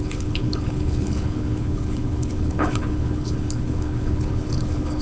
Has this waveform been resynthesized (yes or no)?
yes